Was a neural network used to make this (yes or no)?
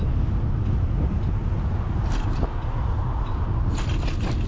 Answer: no